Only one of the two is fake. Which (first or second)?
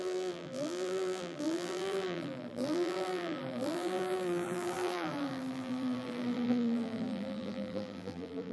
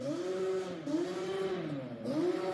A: first